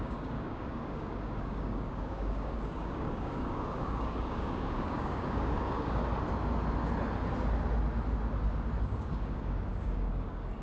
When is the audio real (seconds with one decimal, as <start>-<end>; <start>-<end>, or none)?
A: 6.0-8.8